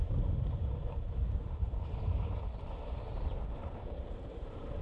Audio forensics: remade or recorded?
remade